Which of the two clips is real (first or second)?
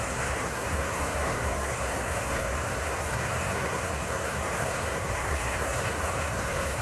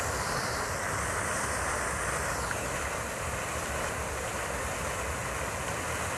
second